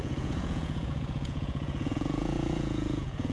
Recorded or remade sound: remade